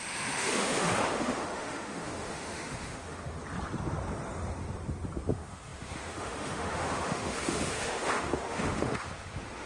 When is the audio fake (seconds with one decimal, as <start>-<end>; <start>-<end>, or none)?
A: 0.0-3.4; 5.3-9.7